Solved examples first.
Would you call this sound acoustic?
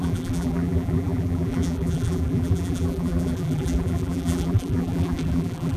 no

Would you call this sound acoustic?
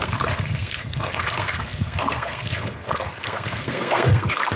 no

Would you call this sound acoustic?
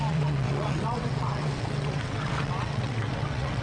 no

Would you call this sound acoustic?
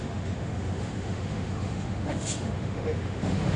no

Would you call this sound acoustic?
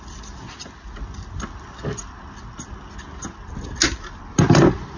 yes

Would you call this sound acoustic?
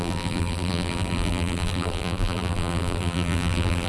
no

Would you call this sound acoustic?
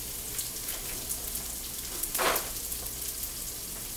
yes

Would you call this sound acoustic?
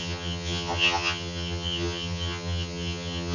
no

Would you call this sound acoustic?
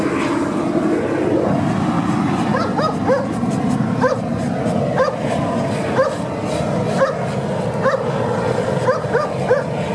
yes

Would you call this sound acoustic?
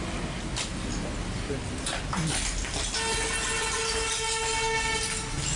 yes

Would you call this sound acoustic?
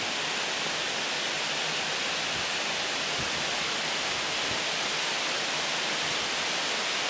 yes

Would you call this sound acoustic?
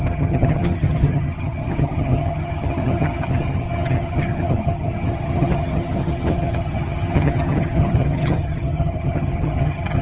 no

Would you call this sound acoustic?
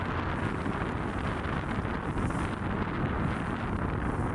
yes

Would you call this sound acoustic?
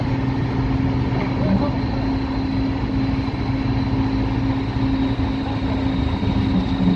yes